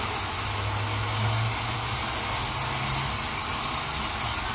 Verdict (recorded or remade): recorded